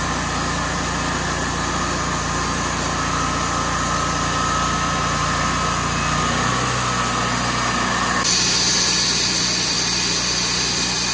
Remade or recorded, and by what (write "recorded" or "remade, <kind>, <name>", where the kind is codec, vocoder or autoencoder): recorded